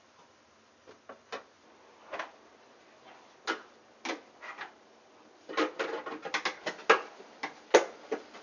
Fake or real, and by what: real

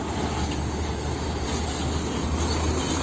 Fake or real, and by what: real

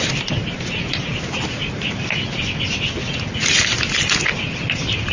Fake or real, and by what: real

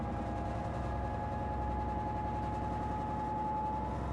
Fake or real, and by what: real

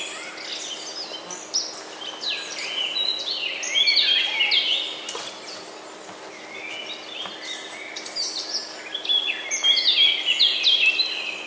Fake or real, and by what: real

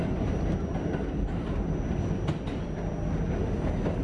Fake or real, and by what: real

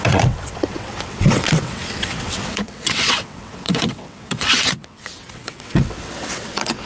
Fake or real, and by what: fake, vocoder, WaveNeXt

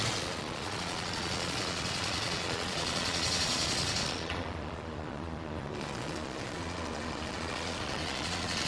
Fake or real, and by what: fake, vocoder, Vocos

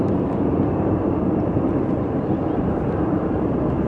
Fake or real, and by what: fake, vocoder, BigVGAN v2